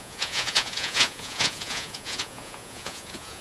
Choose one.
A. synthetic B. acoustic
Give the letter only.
A